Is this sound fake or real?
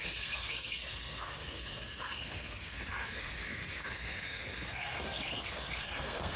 fake